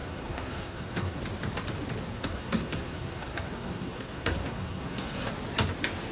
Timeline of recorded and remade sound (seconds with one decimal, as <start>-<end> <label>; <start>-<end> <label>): 0.0-1.2 remade; 1.2-2.1 recorded; 2.1-5.3 remade; 5.3-6.1 recorded